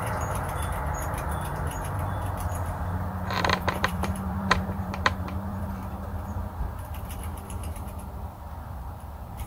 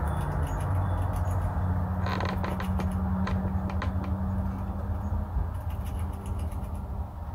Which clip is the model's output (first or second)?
first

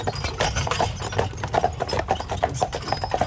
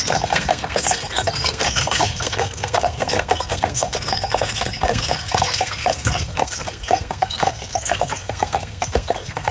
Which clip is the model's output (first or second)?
second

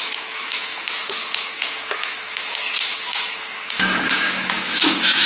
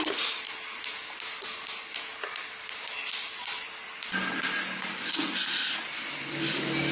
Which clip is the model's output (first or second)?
first